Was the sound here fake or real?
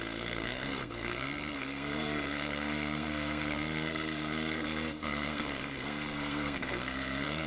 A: fake